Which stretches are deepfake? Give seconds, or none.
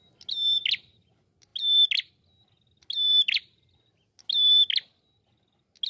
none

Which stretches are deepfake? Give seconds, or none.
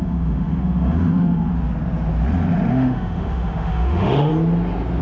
0.0-1.5; 2.7-4.3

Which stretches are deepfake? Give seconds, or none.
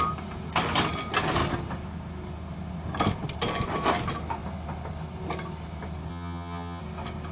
6.1-6.8